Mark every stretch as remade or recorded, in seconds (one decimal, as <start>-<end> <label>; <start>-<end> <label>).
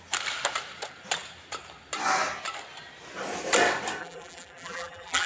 0.0-4.0 recorded; 4.0-5.3 remade